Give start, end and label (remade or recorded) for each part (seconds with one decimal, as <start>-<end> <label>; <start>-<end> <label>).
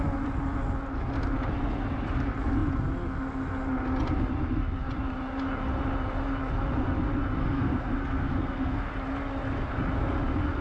0.0-7.4 recorded; 7.4-8.8 remade; 8.8-10.6 recorded